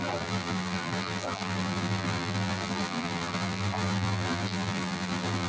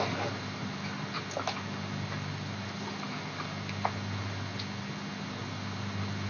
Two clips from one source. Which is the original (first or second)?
second